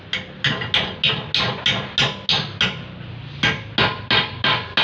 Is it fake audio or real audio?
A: real